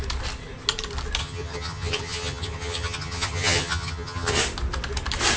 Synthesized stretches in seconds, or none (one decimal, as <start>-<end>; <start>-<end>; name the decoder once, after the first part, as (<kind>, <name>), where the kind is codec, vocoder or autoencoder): 1.2-4.4 (vocoder, HiFi-GAN)